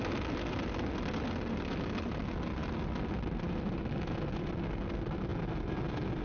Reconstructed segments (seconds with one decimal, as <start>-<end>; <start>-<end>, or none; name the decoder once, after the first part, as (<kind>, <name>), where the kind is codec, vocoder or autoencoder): none